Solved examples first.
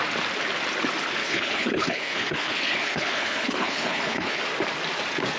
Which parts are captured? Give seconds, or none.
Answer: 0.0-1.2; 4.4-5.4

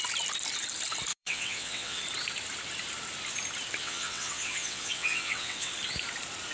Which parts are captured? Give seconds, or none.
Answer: 0.0-1.1; 2.0-3.8; 5.7-6.5

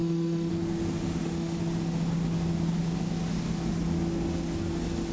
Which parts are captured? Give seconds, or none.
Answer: 0.5-1.0; 1.6-5.1